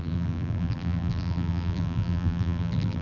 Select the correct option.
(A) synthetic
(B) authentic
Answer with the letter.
A